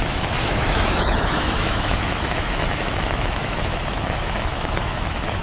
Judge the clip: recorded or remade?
remade